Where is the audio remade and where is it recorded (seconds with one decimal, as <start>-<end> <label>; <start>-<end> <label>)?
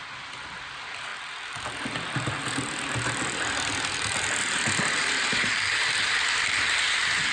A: 0.0-7.3 remade